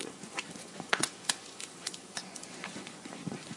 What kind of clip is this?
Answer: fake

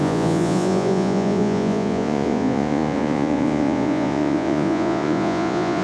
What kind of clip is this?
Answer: fake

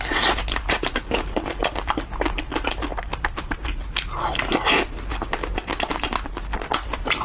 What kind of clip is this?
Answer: real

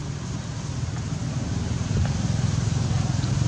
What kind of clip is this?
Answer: real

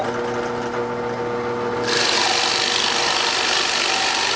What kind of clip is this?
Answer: real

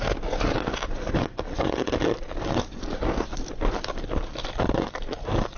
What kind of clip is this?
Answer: real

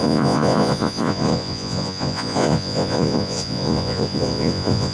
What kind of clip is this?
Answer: fake